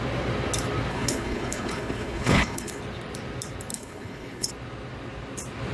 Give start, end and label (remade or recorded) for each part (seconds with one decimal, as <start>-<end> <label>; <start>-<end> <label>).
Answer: 0.0-0.9 recorded; 0.9-2.8 remade; 2.8-3.7 recorded; 3.7-4.5 remade; 4.5-5.7 recorded